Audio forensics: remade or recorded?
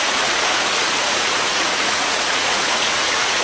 remade